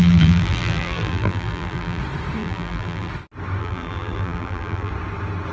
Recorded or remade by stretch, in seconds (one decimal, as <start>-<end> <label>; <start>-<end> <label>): 0.0-2.0 remade; 2.0-2.4 recorded; 2.4-3.1 remade; 3.1-3.6 recorded; 3.6-4.9 remade; 4.9-5.5 recorded